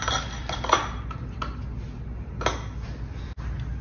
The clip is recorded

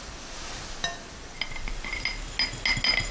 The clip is recorded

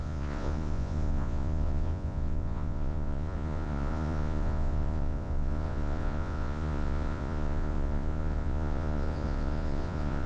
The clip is remade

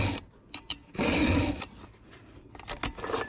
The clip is recorded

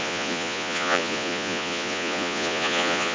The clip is remade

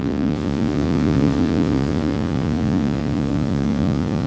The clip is remade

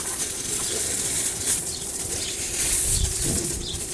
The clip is remade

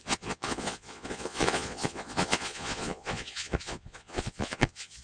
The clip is remade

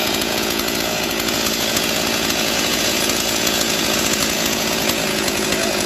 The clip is remade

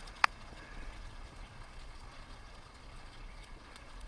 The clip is remade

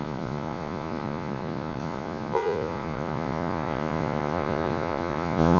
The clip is remade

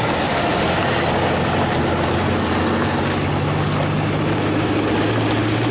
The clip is recorded